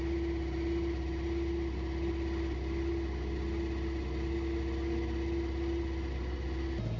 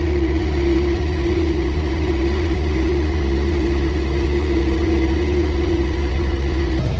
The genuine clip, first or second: first